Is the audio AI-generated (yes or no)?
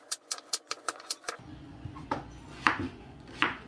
yes